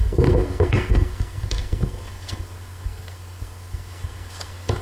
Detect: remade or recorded remade